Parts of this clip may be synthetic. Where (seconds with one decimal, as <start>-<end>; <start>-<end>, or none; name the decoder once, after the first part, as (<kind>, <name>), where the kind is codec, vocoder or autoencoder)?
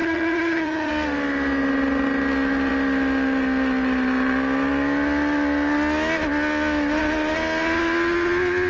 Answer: 0.0-0.9 (vocoder, HiFi-GAN)